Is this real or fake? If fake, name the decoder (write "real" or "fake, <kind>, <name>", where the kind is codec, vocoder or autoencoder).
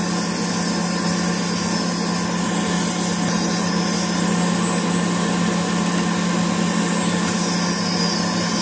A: real